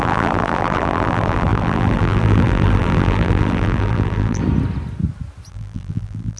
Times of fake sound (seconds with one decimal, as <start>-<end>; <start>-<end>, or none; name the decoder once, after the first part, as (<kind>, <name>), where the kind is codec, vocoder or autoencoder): 0.0-4.4 (vocoder, BigVGAN v2); 5.5-6.4